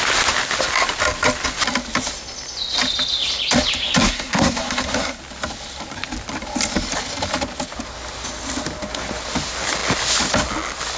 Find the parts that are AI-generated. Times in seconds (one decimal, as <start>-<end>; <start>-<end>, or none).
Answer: 4.0-5.2